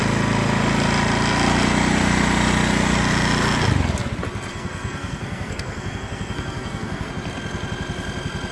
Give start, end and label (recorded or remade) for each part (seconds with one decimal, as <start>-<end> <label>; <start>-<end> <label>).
0.0-4.5 recorded; 4.5-7.1 remade; 7.1-8.5 recorded

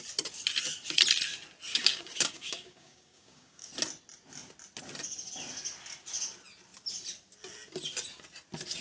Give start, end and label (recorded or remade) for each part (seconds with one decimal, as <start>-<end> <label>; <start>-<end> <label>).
0.0-1.7 recorded; 1.7-3.7 remade; 3.7-8.8 recorded

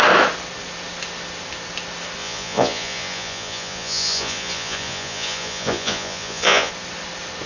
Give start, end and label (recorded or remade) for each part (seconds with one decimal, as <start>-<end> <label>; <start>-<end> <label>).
0.0-2.2 recorded; 2.2-6.7 remade; 6.7-7.5 recorded

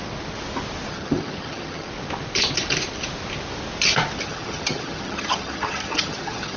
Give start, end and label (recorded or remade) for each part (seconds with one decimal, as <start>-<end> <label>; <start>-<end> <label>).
0.0-0.9 recorded; 0.9-1.9 remade; 1.9-4.2 recorded; 4.2-6.6 remade

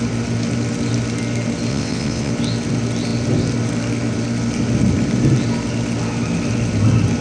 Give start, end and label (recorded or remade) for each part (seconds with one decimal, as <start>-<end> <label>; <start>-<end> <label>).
0.0-1.7 recorded; 1.7-2.3 remade; 2.3-7.2 recorded

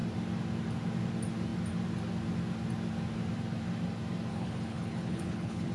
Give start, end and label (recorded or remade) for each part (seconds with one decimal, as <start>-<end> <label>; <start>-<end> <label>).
0.0-4.3 recorded; 4.3-5.7 remade

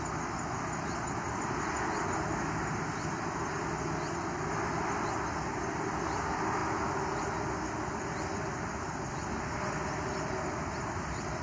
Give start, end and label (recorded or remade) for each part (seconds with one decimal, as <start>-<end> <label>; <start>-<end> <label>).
0.0-11.4 recorded

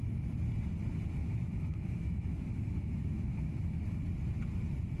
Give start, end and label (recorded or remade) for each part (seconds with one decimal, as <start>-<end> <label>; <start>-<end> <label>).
0.0-1.2 recorded; 1.2-3.8 remade; 3.8-5.0 recorded